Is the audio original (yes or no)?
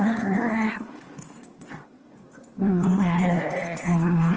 no